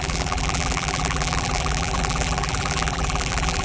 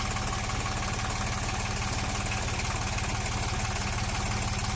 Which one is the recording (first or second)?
second